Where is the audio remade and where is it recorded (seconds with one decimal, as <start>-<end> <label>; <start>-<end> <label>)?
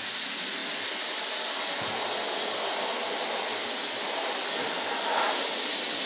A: 0.0-6.1 recorded